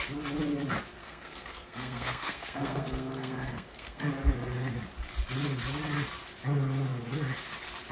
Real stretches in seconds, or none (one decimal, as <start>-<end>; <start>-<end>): 0.0-1.0; 4.1-7.9

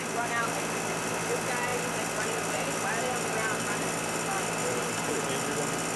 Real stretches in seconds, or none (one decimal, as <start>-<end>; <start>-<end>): 0.0-4.6; 5.2-6.0

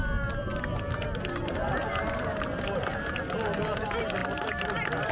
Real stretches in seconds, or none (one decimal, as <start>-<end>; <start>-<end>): 0.0-5.1